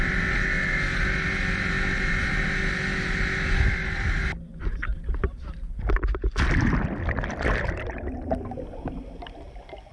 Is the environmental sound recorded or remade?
recorded